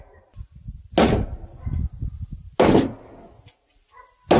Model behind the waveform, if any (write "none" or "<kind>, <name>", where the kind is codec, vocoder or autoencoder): none